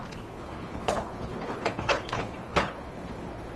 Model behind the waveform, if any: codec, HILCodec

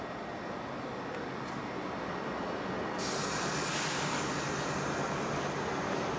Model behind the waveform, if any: none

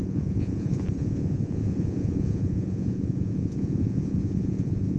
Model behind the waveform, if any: vocoder, Vocos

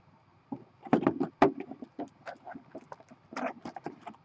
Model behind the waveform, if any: none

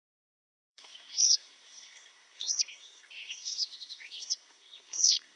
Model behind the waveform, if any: codec, SNAC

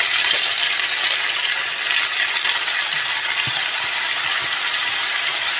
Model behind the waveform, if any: none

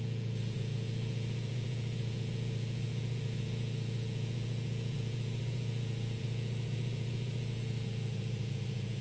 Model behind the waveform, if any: vocoder, Vocos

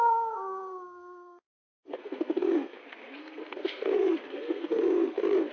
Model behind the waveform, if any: codec, SNAC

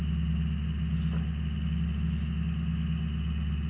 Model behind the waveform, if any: none